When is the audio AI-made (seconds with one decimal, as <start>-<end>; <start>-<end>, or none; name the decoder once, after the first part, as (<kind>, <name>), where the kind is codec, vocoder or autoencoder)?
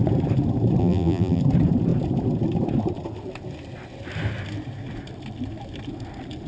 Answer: 0.8-1.4 (vocoder, BigVGAN v2)